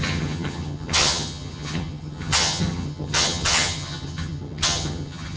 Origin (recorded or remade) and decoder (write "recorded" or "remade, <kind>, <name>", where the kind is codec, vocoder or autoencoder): remade, vocoder, HiFi-GAN